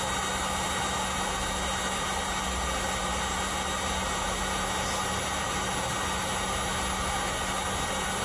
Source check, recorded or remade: recorded